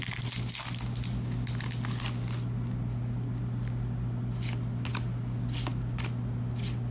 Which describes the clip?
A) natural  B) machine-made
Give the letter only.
A